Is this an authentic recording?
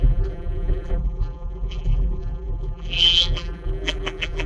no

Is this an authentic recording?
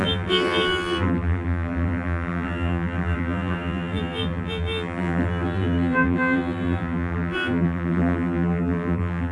no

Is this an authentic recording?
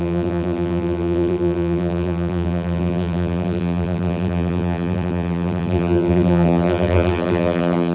no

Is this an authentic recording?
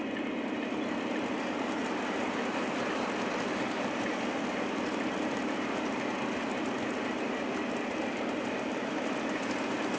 yes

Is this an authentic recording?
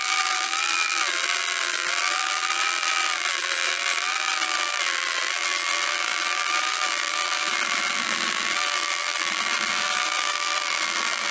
no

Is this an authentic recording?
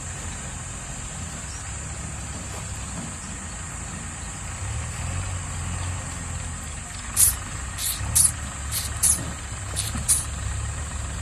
yes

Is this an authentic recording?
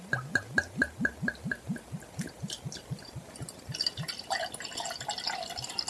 yes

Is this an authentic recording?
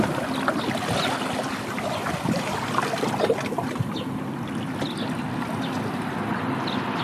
yes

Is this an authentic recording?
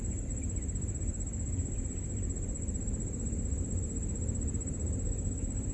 no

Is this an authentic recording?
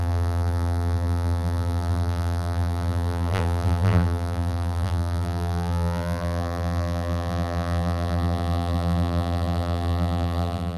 no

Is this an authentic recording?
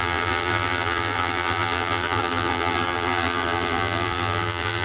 no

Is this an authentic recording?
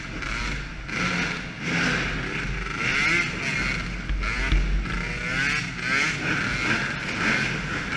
yes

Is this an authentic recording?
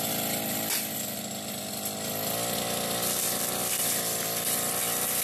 yes